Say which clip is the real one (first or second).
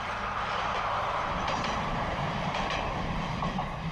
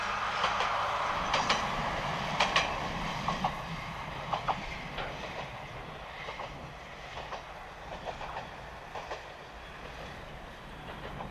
second